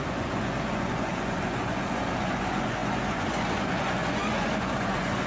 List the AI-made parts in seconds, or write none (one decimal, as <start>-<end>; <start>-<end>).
0.0-5.3

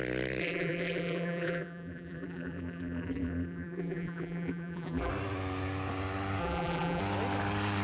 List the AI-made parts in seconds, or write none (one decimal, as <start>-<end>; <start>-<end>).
0.4-5.1; 6.4-7.0

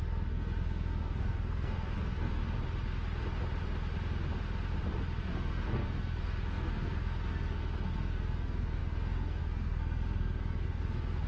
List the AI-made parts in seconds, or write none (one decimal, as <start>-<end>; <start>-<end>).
0.0-2.4; 5.2-11.3